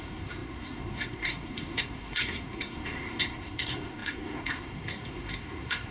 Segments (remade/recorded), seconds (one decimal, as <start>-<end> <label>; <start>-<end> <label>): 0.0-5.9 remade